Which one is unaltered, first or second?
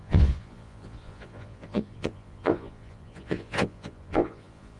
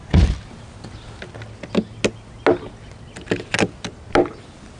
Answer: second